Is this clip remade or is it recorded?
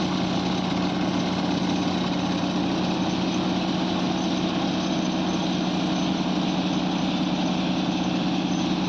recorded